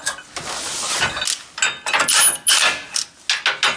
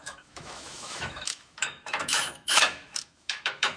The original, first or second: first